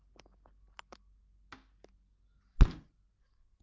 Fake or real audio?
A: real